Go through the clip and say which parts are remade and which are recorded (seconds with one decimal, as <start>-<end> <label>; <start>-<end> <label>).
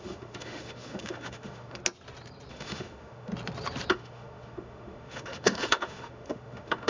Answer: 0.0-1.8 remade; 1.8-2.5 recorded; 2.5-3.3 remade; 3.3-3.9 recorded; 3.9-6.9 remade